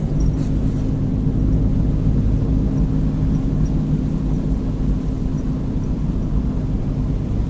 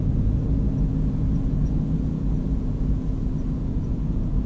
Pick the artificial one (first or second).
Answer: second